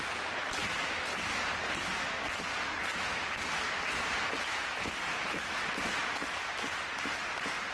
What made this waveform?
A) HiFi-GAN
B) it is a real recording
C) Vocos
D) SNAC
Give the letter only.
B